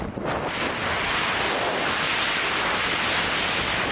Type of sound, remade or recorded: recorded